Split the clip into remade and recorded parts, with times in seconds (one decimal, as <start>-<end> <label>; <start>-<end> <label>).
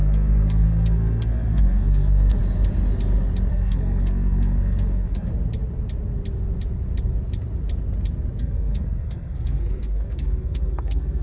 0.0-2.4 remade; 2.4-3.5 recorded; 3.5-5.3 remade; 5.3-8.4 recorded; 8.4-11.2 remade